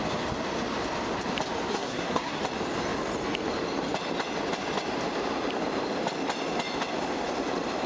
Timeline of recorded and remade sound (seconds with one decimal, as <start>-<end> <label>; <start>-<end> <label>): 0.0-1.7 recorded; 1.7-2.4 remade; 2.4-7.9 recorded